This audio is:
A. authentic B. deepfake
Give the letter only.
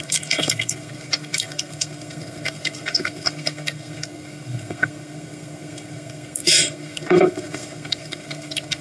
B